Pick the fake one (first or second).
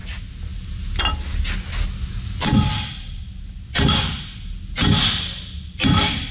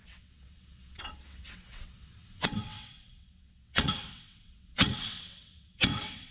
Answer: second